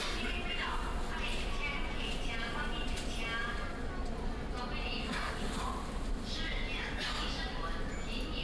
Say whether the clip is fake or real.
real